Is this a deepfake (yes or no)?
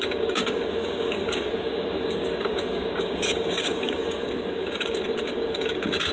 yes